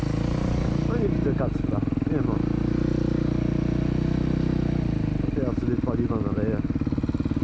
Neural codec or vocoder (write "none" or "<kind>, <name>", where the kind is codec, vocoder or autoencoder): none